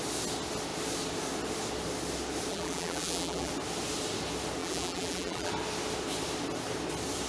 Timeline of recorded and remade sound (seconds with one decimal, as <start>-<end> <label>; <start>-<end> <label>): 0.0-2.5 recorded; 2.5-3.5 remade; 3.5-4.6 recorded; 4.6-5.5 remade; 5.5-7.3 recorded